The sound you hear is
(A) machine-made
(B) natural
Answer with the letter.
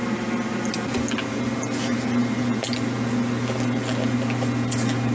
B